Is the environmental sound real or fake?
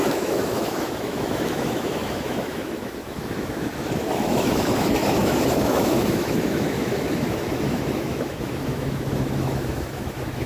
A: fake